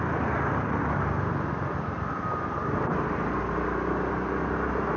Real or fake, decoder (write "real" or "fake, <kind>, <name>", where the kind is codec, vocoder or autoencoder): real